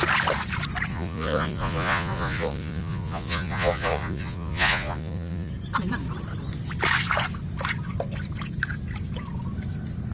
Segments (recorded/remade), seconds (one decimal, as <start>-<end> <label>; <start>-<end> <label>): 0.0-0.9 recorded; 0.9-5.5 remade; 5.5-10.1 recorded